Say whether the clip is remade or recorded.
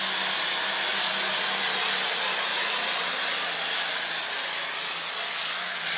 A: recorded